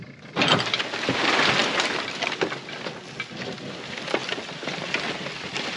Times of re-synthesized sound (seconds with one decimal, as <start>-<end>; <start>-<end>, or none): none